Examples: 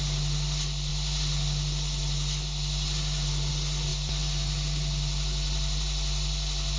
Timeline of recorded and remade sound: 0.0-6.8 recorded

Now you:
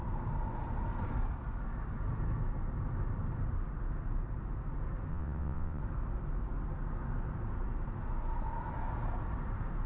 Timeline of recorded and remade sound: 0.0-5.1 recorded; 5.1-5.8 remade; 5.8-9.9 recorded

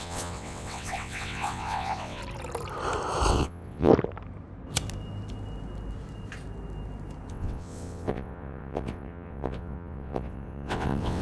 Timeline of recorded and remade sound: 0.0-2.2 remade; 2.2-3.3 recorded; 3.3-3.9 remade; 3.9-7.3 recorded; 7.3-11.2 remade

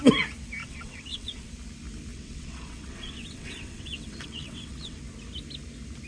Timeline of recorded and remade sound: 0.0-0.6 recorded; 0.6-1.5 remade; 1.5-2.1 recorded; 2.1-5.0 remade; 5.0-6.1 recorded

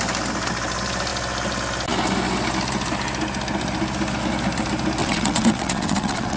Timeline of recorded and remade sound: 0.0-5.0 recorded; 5.0-6.4 remade